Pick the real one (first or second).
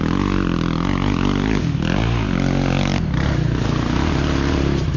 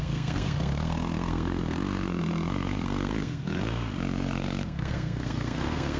first